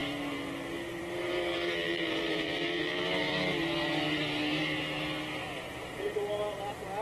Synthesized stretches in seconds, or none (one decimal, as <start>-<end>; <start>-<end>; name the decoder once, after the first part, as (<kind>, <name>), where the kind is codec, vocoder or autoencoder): 1.5-3.3 (vocoder, BigVGAN v2)